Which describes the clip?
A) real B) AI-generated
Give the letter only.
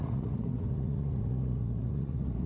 B